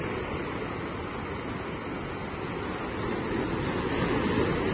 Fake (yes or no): no